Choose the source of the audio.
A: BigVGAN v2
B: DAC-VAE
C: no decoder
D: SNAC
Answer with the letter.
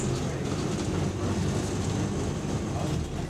C